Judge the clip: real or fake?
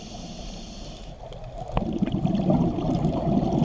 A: real